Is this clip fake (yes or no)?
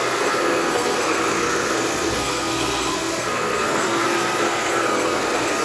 yes